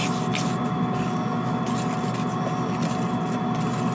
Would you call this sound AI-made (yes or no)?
no